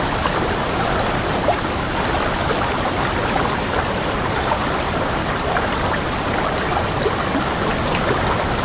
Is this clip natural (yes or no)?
yes